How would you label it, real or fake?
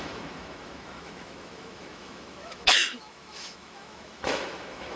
fake